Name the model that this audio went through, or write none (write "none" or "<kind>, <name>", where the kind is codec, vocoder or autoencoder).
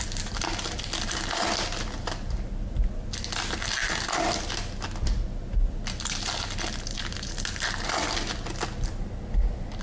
none